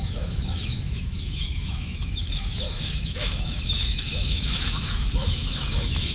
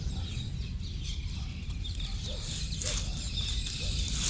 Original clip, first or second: second